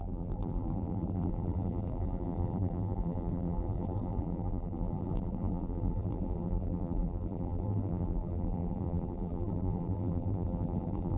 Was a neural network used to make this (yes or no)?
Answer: yes